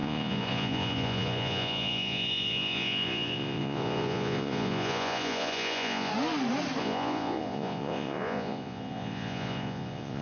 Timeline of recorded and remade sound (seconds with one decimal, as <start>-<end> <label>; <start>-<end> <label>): 0.0-6.1 remade; 6.1-6.8 recorded; 6.8-10.2 remade